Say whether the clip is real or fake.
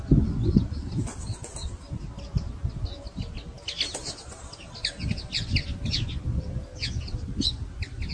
real